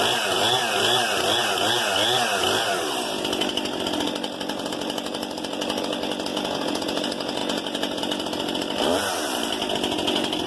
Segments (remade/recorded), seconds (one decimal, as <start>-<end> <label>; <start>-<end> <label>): 0.0-6.3 recorded; 6.3-7.0 remade; 7.0-7.4 recorded; 7.4-8.0 remade; 8.0-10.5 recorded